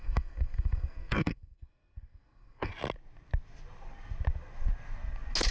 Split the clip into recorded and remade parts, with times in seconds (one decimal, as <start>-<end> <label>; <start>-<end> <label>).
0.0-2.7 remade; 2.7-5.5 recorded